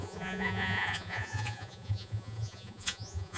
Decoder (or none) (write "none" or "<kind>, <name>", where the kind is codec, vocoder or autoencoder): vocoder, Vocos